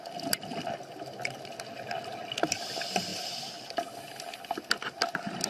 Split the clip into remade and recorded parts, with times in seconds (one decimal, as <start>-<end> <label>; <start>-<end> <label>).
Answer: 0.0-5.5 recorded